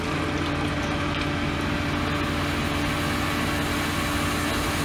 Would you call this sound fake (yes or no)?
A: no